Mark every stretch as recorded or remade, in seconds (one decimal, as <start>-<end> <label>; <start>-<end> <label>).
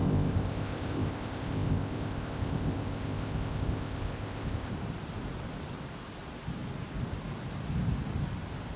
0.0-4.7 remade; 4.7-8.8 recorded